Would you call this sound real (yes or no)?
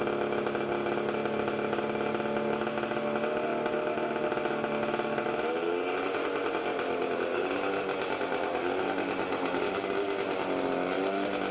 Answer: yes